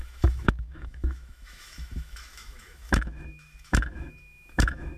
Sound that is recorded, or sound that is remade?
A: remade